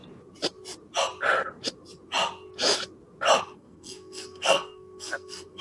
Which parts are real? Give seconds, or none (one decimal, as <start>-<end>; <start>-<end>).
0.0-3.4